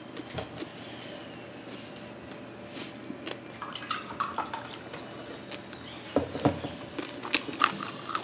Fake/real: real